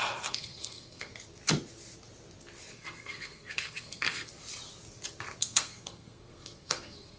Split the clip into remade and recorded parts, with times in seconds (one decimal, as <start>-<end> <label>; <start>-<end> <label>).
0.0-1.1 remade; 1.1-2.7 recorded; 2.7-4.3 remade; 4.3-5.4 recorded; 5.4-7.2 remade